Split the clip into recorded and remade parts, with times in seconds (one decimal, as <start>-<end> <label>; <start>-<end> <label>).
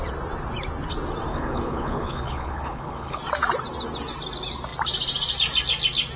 0.0-1.3 recorded; 1.3-3.2 remade; 3.2-6.2 recorded